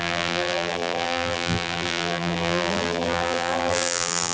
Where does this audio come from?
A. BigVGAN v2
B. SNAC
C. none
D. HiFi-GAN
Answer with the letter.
A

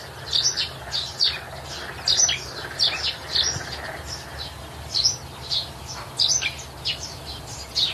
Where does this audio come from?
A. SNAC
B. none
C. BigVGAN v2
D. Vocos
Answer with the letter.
B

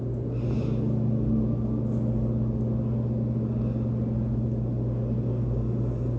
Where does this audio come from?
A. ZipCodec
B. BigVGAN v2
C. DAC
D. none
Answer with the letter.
D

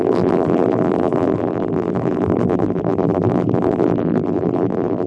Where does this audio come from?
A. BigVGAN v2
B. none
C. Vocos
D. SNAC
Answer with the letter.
A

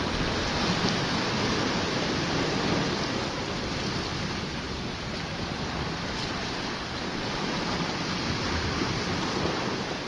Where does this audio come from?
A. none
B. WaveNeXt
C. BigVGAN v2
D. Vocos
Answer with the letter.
A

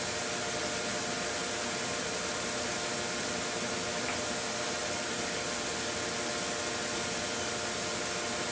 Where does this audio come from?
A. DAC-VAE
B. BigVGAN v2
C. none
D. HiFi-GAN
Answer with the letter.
C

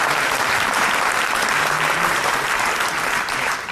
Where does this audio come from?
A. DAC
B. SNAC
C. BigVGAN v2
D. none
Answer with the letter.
C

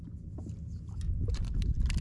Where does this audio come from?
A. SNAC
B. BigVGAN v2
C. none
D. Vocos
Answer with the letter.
C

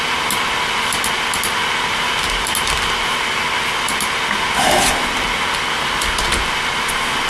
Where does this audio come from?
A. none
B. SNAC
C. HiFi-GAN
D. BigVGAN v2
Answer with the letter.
A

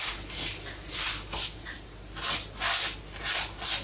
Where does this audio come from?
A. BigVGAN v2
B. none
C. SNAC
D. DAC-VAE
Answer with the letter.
B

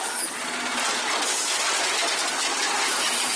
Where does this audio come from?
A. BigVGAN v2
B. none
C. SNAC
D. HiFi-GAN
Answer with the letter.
B